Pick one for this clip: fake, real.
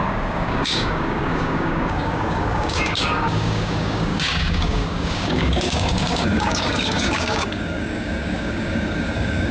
fake